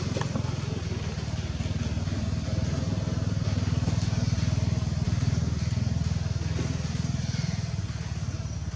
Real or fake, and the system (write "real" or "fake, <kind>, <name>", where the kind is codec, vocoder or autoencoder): real